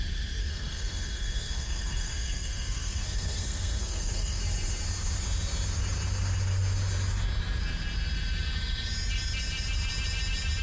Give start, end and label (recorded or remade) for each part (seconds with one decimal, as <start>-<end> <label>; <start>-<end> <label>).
0.0-0.4 recorded; 0.4-4.4 remade; 4.4-10.6 recorded